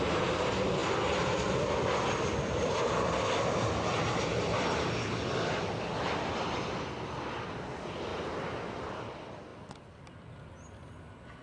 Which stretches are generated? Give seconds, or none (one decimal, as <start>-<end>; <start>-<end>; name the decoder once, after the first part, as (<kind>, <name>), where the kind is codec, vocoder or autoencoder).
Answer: 8.1-8.6 (vocoder, BigVGAN v2); 9.5-10.3